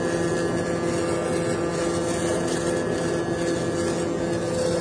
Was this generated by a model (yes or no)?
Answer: no